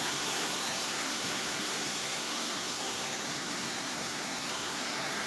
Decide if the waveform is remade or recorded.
remade